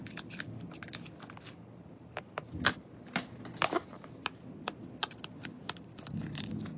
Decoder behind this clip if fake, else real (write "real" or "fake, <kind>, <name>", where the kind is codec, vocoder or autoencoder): real